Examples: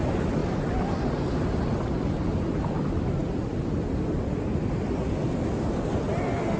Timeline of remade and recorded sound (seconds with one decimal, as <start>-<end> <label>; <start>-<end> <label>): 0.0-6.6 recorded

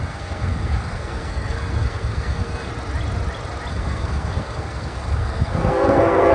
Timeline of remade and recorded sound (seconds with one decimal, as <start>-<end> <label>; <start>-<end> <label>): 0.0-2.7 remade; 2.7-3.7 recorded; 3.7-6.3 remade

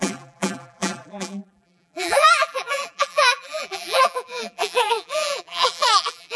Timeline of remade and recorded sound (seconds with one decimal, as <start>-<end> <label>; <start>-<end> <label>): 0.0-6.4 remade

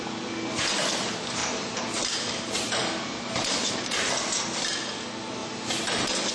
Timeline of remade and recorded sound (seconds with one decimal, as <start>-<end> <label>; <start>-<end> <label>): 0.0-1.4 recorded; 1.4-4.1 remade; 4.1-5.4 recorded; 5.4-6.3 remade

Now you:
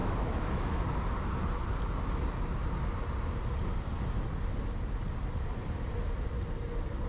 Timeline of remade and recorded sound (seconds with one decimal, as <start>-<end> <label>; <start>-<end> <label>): 0.0-0.8 remade; 0.8-7.1 recorded

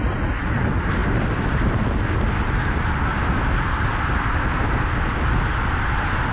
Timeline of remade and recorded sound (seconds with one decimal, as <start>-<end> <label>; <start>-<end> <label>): 0.0-6.3 recorded

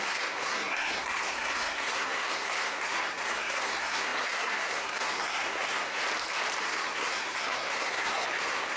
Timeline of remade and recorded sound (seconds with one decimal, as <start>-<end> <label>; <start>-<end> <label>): 0.0-6.0 remade; 6.0-6.6 recorded; 6.6-8.8 remade